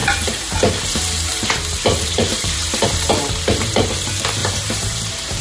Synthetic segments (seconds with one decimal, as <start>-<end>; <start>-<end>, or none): 0.0-3.1; 4.4-5.4